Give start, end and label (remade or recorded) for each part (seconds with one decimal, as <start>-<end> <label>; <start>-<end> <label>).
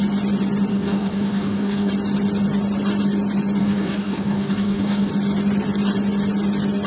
0.0-0.7 recorded; 0.7-1.9 remade; 1.9-3.6 recorded; 3.6-5.1 remade; 5.1-6.9 recorded